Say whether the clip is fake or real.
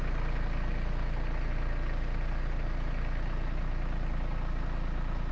real